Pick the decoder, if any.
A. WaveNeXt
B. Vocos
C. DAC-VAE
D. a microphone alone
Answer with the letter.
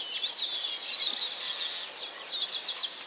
D